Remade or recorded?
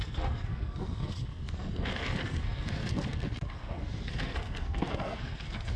remade